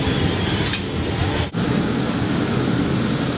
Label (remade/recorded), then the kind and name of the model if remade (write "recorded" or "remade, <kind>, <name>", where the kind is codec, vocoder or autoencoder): recorded